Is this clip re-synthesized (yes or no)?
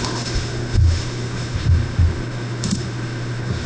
yes